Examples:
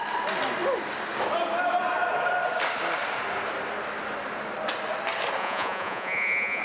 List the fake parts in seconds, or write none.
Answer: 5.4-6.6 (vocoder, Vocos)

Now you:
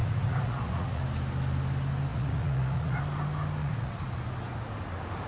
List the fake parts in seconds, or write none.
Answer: 0.0-1.0 (vocoder, Vocos); 2.1-3.0; 3.6-4.1

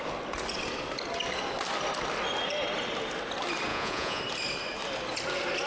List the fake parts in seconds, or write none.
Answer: 3.7-4.2 (vocoder, Vocos)

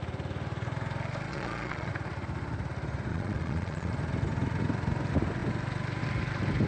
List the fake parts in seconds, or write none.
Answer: 1.3-1.9 (vocoder, Vocos); 3.1-3.9

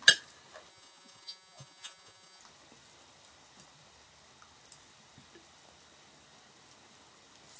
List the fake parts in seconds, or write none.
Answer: 0.7-2.4 (vocoder, Vocos)

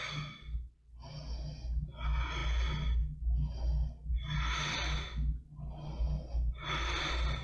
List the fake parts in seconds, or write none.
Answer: none

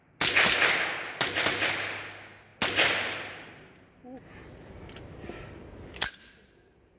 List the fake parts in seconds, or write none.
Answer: none